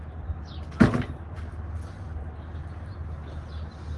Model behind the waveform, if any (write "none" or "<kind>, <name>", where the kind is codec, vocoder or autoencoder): none